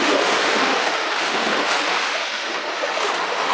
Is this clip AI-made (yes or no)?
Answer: yes